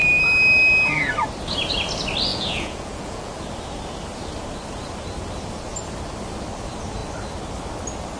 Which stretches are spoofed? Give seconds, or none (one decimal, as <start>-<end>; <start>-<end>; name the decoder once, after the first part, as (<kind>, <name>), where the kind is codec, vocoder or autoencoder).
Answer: 2.3-3.3 (vocoder, Vocos)